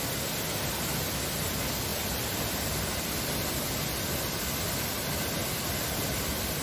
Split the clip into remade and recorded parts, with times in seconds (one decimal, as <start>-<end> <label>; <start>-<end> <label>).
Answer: 0.0-1.9 recorded; 1.9-3.6 remade; 3.6-6.6 recorded